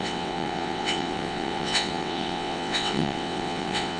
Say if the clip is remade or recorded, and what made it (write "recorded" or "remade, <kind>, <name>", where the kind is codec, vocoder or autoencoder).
remade, vocoder, WaveNeXt